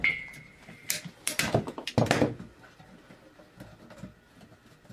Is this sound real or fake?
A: real